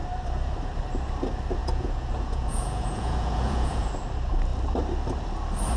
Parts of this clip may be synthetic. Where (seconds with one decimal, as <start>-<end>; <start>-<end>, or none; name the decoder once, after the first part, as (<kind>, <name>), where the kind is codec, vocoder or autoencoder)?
1.6-3.9 (vocoder, Vocos)